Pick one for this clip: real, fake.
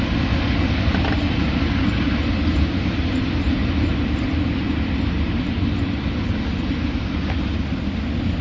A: real